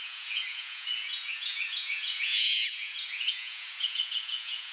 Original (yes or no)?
no